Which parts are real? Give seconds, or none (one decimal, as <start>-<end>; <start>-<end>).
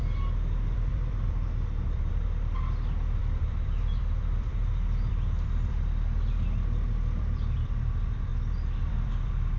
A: 8.3-8.8